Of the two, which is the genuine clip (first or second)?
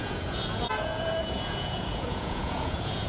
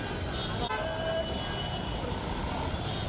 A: second